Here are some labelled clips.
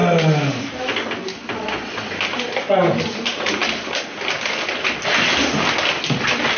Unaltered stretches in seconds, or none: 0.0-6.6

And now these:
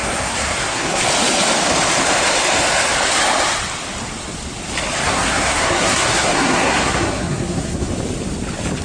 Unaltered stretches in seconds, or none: 1.0-5.0; 7.9-8.8

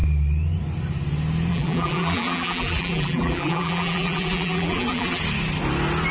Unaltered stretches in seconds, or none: 0.0-1.5; 5.2-6.1

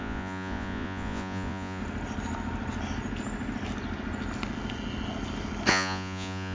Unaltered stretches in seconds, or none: 1.8-5.7

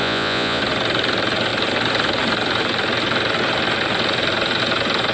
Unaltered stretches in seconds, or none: 0.6-5.1

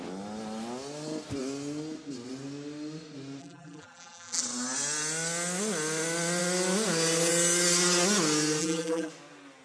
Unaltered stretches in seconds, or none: 0.0-3.4; 4.4-8.6; 9.1-9.6

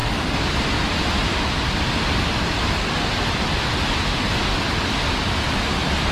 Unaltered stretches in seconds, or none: 0.0-6.1